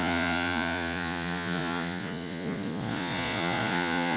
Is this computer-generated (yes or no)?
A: yes